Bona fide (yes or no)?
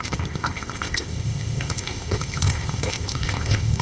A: no